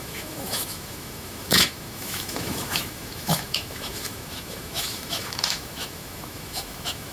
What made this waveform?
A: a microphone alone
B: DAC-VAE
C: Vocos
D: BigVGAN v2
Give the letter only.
B